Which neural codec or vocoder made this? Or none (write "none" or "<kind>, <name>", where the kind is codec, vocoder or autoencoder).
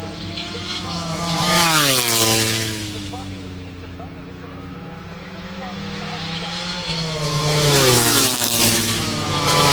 autoencoder, DAC-VAE